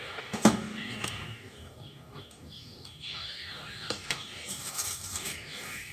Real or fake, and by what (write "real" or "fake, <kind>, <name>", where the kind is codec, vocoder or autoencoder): fake, codec, DAC